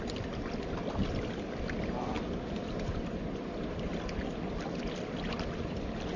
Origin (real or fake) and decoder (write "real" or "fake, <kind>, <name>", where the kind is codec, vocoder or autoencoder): real